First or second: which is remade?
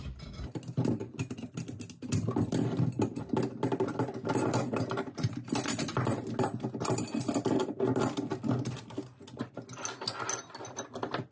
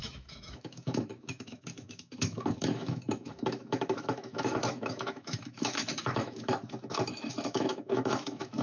second